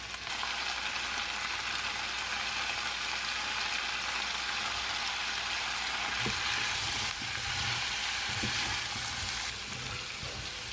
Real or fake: real